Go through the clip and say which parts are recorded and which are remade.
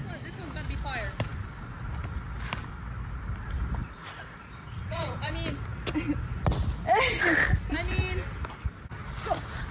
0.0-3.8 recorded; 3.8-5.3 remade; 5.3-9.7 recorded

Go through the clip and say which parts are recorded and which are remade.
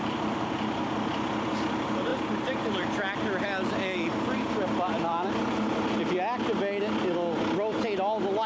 0.0-8.5 recorded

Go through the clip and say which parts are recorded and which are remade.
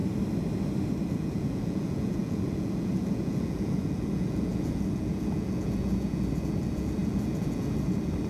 0.0-1.0 recorded; 1.0-8.3 remade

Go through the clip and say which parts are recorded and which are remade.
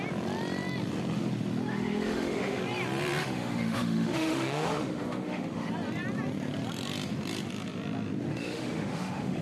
0.0-1.7 recorded; 1.7-2.6 remade; 2.6-3.2 recorded; 3.2-5.7 remade; 5.7-8.3 recorded; 8.3-9.4 remade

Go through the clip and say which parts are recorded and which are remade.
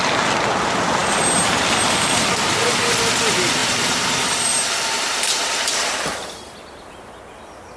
0.0-3.6 recorded; 3.6-7.1 remade; 7.1-7.8 recorded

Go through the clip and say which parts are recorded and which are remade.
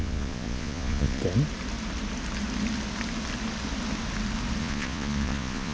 0.0-1.2 remade; 1.2-4.6 recorded; 4.6-5.7 remade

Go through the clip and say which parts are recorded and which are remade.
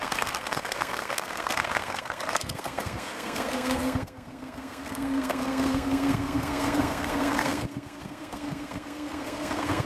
0.0-9.9 remade